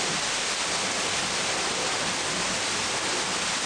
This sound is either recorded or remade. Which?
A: recorded